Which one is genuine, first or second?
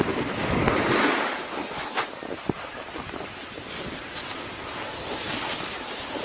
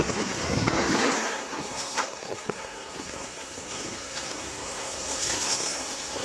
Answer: first